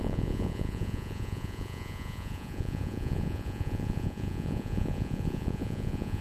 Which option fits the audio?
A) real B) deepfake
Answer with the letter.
B